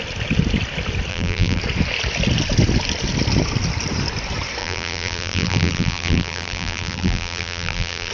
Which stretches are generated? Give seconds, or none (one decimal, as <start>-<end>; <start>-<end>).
1.1-1.6; 4.6-8.1